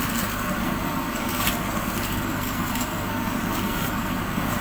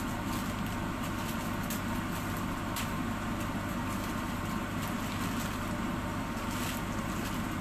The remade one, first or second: first